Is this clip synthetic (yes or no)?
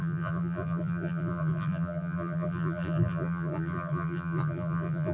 yes